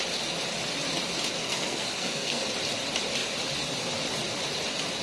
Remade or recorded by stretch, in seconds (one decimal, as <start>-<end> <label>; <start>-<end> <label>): 0.0-1.4 recorded; 1.4-2.4 remade; 2.4-5.0 recorded

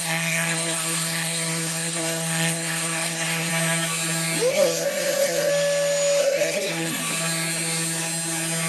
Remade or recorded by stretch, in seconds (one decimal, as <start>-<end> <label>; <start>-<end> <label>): 0.0-3.5 remade; 3.5-4.5 recorded; 4.5-5.5 remade; 5.5-6.2 recorded; 6.2-7.0 remade; 7.0-8.7 recorded

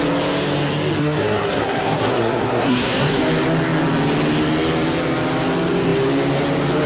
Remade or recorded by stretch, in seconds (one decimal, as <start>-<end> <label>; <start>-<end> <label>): 0.0-1.0 recorded; 1.0-3.2 remade; 3.2-6.9 recorded

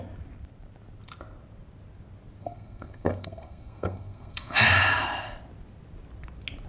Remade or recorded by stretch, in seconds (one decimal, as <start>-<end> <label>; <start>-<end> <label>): 0.0-2.4 recorded; 2.4-4.6 remade; 4.6-6.7 recorded

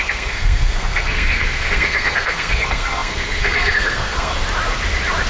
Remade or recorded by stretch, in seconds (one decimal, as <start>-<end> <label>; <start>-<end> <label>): 0.0-4.3 remade; 4.3-5.3 recorded

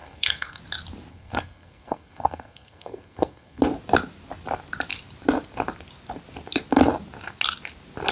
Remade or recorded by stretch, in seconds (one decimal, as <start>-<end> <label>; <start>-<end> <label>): 0.0-0.6 remade; 0.6-1.1 recorded; 1.1-3.6 remade; 3.6-8.1 recorded

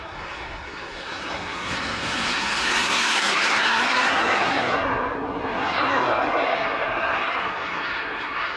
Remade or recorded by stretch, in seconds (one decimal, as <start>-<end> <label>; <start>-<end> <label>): 0.0-8.6 remade

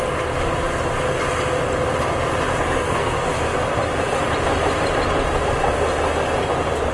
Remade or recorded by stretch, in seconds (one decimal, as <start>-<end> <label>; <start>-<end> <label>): 0.0-2.6 recorded; 2.6-3.3 remade; 3.3-6.9 recorded